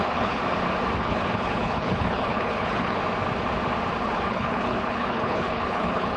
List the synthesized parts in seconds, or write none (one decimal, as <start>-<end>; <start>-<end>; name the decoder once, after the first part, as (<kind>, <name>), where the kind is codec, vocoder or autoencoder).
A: 0.0-0.4 (codec, HILCodec); 1.0-3.0; 4.0-6.2